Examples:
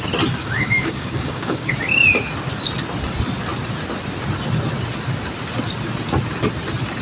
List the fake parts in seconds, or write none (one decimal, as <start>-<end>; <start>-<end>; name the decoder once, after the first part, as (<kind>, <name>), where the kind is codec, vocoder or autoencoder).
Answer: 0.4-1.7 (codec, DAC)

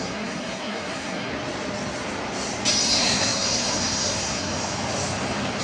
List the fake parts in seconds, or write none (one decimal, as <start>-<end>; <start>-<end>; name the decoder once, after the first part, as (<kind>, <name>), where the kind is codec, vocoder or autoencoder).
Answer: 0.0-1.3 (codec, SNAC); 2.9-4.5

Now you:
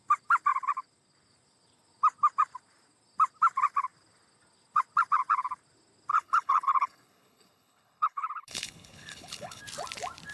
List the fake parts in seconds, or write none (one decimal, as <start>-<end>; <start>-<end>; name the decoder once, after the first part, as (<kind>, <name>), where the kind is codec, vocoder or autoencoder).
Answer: 6.1-9.6 (codec, HILCodec)

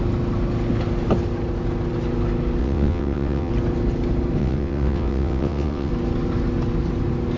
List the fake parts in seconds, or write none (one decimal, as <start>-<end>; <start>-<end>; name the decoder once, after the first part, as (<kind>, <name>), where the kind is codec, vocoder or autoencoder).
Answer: 2.6-3.5 (vocoder, WaveNeXt); 4.4-5.9

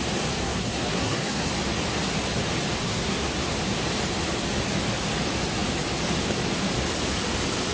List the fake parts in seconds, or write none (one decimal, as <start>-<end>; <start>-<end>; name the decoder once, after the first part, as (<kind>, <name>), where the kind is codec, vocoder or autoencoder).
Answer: 0.4-1.5 (codec, SNAC); 2.8-3.3

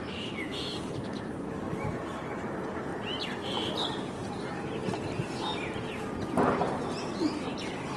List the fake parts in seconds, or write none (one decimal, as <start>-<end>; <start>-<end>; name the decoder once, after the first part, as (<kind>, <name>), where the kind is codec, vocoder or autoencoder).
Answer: 0.0-2.9 (vocoder, BigVGAN v2); 4.1-4.8; 7.6-8.0

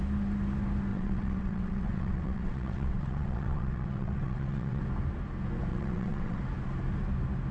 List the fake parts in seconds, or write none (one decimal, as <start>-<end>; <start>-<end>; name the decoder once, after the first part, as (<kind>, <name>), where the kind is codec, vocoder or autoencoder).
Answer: 0.9-4.8 (vocoder, WaveNeXt); 5.7-6.4